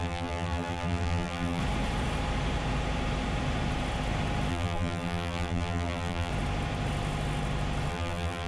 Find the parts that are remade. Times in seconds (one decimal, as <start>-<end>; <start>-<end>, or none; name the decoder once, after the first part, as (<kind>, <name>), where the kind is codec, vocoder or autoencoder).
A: 0.0-1.6 (vocoder, BigVGAN v2); 4.5-6.3; 7.9-8.5